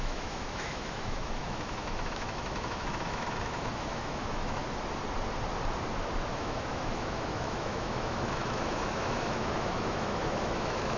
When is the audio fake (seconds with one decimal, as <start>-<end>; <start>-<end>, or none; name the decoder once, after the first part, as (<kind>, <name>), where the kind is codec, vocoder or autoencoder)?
0.0-4.6 (autoencoder, DAC-VAE); 6.3-11.0